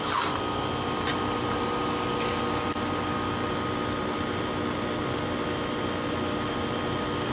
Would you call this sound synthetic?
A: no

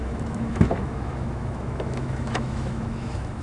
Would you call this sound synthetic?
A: yes